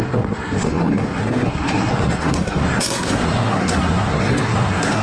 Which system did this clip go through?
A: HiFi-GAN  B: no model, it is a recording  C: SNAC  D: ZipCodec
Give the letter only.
C